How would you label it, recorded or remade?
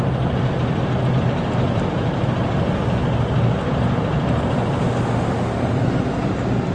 recorded